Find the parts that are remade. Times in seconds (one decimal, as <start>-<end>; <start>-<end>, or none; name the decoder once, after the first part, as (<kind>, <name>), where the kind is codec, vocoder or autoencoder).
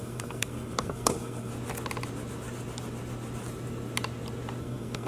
0.0-1.5 (codec, SNAC); 4.6-5.1